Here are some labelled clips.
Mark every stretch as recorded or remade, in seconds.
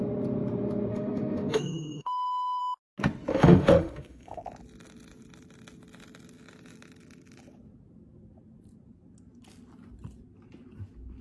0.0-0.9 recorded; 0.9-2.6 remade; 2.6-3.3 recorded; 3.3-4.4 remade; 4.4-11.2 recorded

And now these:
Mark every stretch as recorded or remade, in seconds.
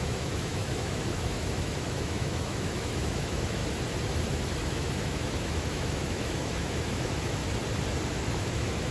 0.0-3.6 remade; 3.6-4.3 recorded; 4.3-7.4 remade; 7.4-8.1 recorded; 8.1-8.9 remade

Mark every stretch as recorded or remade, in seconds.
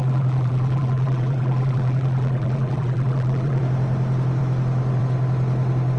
0.0-3.6 remade; 3.6-6.0 recorded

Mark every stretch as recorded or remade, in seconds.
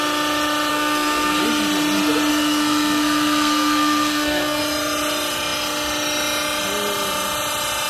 0.0-0.7 recorded; 0.7-1.4 remade; 1.4-2.3 recorded; 2.3-4.6 remade; 4.6-7.9 recorded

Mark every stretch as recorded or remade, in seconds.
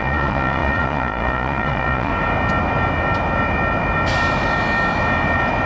0.0-2.1 remade; 2.1-5.7 recorded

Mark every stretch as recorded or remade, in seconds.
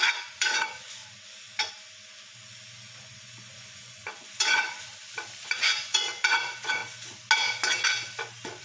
0.0-1.0 remade; 1.0-3.0 recorded; 3.0-4.9 remade; 4.9-5.4 recorded; 5.4-6.8 remade; 6.8-8.6 recorded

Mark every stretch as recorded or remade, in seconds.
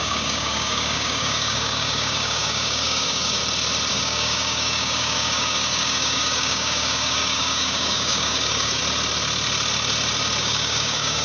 0.0-3.4 remade; 3.4-3.9 recorded; 3.9-8.8 remade; 8.8-10.4 recorded; 10.4-11.2 remade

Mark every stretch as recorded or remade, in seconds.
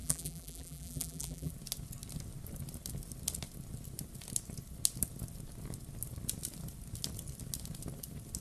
0.0-1.5 remade; 1.5-8.4 recorded